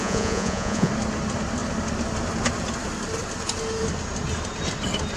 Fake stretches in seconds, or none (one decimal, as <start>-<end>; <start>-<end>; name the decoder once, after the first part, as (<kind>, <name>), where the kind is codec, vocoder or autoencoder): 0.0-0.9 (vocoder, Vocos)